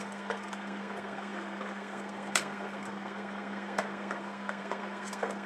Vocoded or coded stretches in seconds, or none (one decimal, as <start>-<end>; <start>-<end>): 0.0-5.5